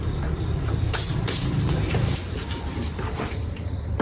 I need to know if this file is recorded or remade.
remade